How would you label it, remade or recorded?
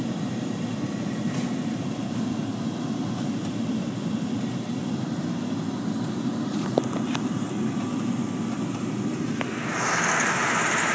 recorded